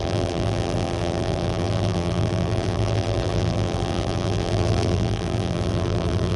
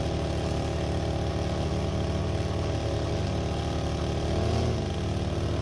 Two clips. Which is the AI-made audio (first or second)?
first